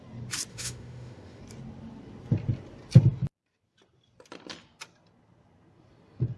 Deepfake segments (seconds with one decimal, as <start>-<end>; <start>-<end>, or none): 0.5-1.4